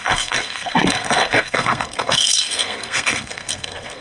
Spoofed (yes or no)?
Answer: yes